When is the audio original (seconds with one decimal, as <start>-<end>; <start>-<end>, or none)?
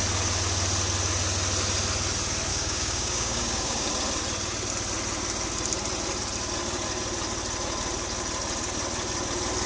0.0-2.5; 3.9-9.7